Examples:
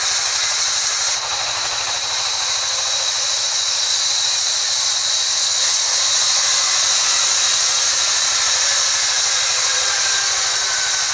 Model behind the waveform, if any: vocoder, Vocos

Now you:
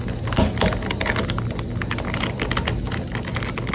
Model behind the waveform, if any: none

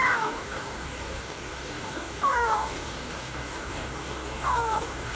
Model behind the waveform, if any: codec, DAC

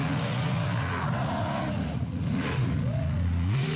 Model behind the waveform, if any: vocoder, Vocos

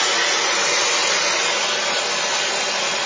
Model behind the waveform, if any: none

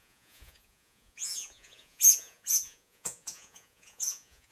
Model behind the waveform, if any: vocoder, Vocos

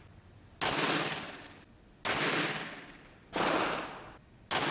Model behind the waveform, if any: none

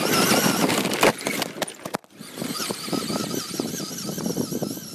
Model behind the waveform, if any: none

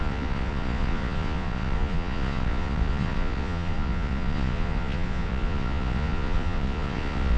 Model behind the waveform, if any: vocoder, Vocos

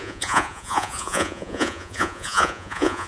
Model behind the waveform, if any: vocoder, Vocos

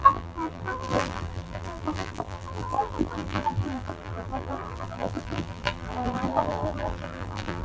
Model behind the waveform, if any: vocoder, BigVGAN v2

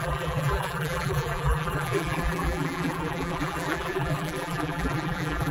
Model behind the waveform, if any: vocoder, BigVGAN v2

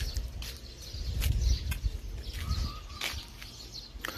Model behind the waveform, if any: none